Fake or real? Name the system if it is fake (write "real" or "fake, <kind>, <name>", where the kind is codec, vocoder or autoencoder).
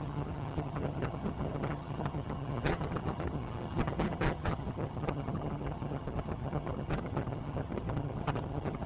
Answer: fake, vocoder, HiFi-GAN